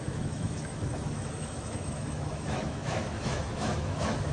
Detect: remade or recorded remade